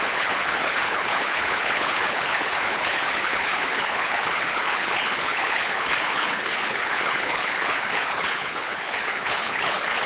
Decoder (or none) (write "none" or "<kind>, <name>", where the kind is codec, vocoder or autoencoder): codec, HILCodec